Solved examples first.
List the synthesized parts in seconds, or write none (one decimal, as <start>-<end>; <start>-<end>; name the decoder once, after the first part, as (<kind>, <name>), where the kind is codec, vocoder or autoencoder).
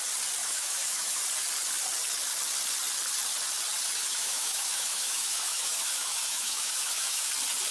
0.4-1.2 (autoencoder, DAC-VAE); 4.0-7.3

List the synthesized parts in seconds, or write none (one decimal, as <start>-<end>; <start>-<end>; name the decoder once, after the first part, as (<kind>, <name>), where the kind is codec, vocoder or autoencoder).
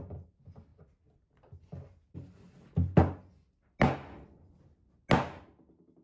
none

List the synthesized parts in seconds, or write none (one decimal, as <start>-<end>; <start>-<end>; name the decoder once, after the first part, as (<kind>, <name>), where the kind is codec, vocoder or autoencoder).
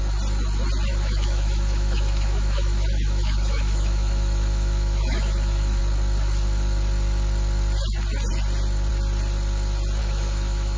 0.9-5.8 (autoencoder, DAC-VAE); 10.0-10.8